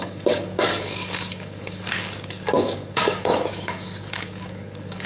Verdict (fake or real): fake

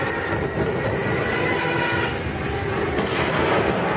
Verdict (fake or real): real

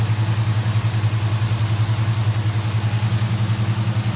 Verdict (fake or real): real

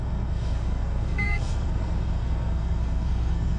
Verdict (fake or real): fake